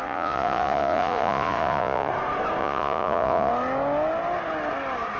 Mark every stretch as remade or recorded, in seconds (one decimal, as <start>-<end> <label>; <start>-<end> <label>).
0.0-2.1 remade; 2.1-2.6 recorded; 2.6-3.5 remade; 3.5-5.2 recorded